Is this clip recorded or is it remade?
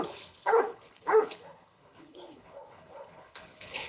remade